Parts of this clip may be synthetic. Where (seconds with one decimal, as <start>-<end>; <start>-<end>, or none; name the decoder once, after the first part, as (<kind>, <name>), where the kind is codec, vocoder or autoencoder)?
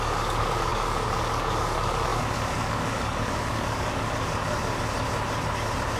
0.0-4.4 (codec, DAC)